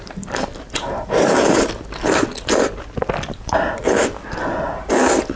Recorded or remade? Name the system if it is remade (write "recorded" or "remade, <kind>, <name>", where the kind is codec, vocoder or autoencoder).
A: recorded